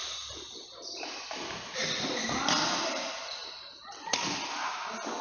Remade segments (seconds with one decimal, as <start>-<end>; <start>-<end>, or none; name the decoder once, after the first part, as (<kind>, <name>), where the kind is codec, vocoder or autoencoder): none